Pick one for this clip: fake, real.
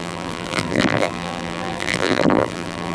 fake